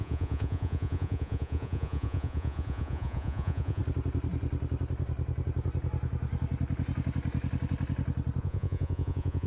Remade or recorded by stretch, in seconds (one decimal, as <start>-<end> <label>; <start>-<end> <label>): 0.0-3.8 remade; 3.8-8.4 recorded; 8.4-9.5 remade

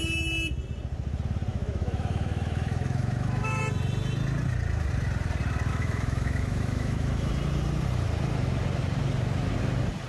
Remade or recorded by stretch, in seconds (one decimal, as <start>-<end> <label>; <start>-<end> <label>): 0.0-1.5 recorded; 1.5-3.6 remade; 3.6-5.7 recorded; 5.7-7.3 remade; 7.3-10.1 recorded